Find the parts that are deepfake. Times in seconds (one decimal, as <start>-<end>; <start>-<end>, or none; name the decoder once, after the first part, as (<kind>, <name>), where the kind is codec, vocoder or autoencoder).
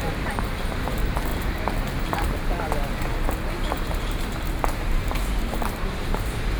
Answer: 0.0-1.3 (vocoder, BigVGAN v2); 3.6-6.6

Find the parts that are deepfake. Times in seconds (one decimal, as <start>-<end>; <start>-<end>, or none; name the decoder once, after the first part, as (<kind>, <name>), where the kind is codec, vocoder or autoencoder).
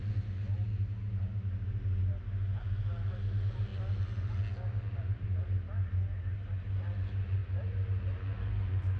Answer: none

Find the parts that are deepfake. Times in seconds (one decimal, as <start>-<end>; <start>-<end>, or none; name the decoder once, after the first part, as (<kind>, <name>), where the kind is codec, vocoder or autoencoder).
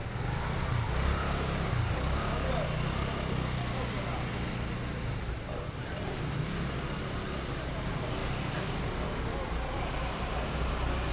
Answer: 1.2-2.5 (codec, DAC)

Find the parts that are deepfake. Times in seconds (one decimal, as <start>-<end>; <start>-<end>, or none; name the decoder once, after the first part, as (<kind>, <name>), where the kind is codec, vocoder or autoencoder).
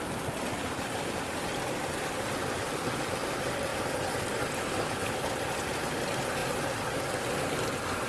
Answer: none